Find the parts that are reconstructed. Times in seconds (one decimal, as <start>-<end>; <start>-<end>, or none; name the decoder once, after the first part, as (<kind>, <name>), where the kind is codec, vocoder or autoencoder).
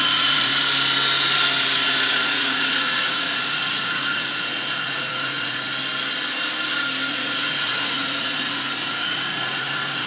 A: 0.0-0.5 (vocoder, Vocos); 2.1-5.8; 7.1-10.1